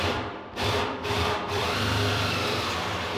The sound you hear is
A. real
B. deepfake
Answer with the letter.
B